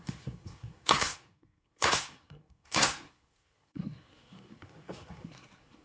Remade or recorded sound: remade